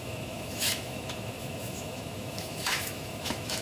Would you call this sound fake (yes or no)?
yes